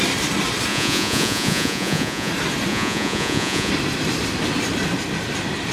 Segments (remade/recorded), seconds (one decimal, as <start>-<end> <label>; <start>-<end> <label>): 0.0-0.7 recorded; 0.7-2.3 remade; 2.3-2.7 recorded; 2.7-3.7 remade; 3.7-5.7 recorded